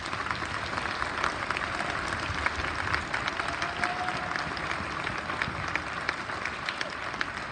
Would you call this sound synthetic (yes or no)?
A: no